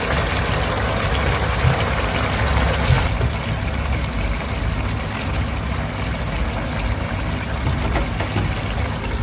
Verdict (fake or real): real